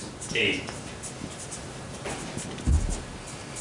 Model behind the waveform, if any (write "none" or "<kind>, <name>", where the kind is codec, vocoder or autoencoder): none